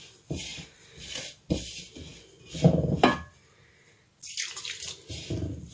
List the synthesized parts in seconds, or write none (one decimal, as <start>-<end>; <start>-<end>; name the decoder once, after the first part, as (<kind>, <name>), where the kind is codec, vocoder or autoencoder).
none